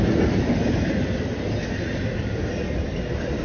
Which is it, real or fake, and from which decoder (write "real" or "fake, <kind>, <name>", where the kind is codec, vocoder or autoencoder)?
real